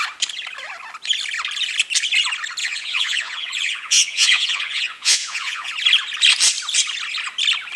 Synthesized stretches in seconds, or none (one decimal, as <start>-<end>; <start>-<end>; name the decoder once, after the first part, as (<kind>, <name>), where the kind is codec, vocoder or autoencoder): 2.6-5.7 (vocoder, Vocos)